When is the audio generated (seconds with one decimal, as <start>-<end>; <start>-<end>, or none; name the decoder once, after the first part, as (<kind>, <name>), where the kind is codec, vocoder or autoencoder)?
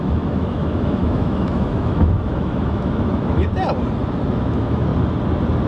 0.0-3.5 (autoencoder, DAC-VAE); 4.3-4.9